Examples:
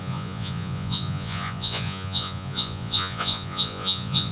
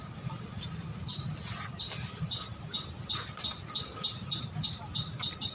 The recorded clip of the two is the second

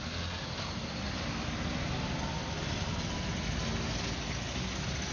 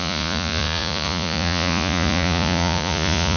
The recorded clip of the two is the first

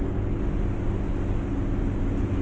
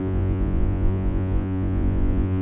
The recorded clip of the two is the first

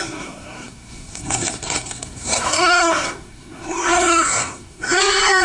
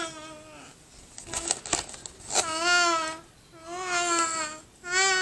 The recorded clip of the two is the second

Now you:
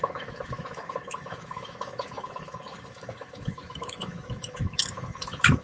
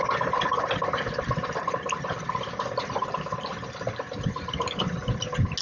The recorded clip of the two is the second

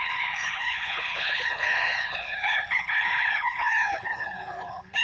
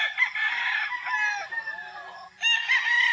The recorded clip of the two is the second